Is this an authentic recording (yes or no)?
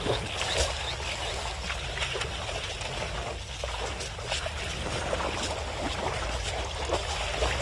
yes